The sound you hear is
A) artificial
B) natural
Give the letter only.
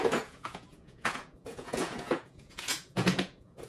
A